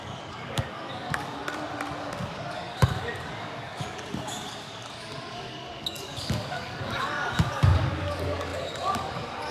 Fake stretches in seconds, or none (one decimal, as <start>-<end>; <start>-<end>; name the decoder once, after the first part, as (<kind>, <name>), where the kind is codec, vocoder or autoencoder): 0.0-1.4 (codec, DAC); 2.0-9.5